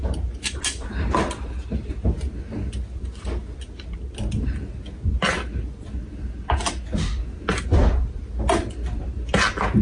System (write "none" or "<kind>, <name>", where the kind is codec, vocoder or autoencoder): none